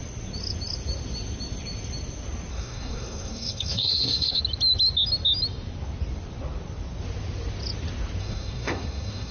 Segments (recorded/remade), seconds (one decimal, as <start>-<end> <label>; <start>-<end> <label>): 0.0-2.5 recorded; 2.5-4.4 remade; 4.4-8.2 recorded; 8.2-9.3 remade